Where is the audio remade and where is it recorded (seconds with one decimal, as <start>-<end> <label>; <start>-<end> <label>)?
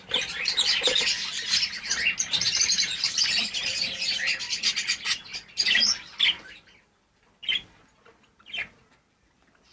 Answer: 0.0-1.3 remade; 1.3-2.5 recorded; 2.5-7.4 remade; 7.4-9.1 recorded; 9.1-9.7 remade